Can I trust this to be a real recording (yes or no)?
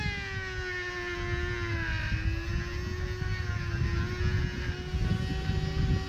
yes